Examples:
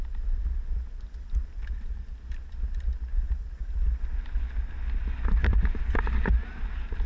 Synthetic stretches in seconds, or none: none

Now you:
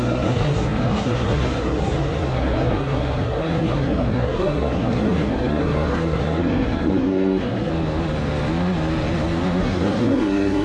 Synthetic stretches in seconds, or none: 0.0-7.7 (codec, SNAC); 9.6-10.6

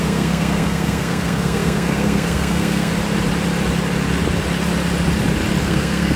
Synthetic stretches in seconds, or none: 0.0-2.9 (codec, SNAC); 5.6-6.2

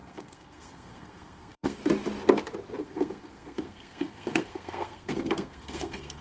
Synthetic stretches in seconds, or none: 0.0-1.8 (codec, SNAC); 2.8-6.2